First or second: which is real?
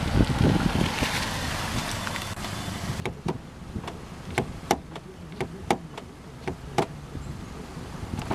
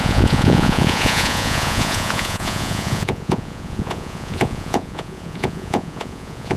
first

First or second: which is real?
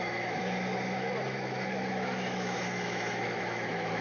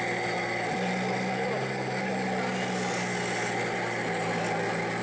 second